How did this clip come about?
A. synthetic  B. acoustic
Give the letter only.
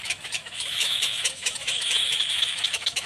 A